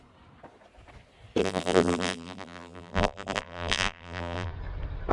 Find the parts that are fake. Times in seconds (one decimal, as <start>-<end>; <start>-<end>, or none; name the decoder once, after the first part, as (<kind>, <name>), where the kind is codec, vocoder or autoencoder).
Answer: 1.4-4.5 (vocoder, BigVGAN v2)